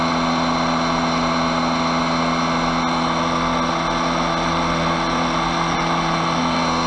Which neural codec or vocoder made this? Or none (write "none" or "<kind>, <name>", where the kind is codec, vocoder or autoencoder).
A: none